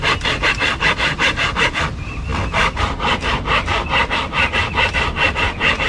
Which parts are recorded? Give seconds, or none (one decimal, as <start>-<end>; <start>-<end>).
2.3-2.8; 4.0-4.7